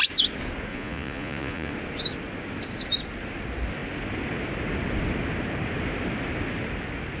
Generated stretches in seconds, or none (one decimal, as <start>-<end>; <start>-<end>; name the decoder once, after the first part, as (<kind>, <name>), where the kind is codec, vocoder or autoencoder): 0.7-1.7 (vocoder, Vocos)